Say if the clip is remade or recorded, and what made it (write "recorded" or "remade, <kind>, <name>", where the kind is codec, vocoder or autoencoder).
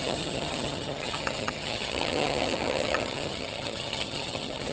remade, vocoder, HiFi-GAN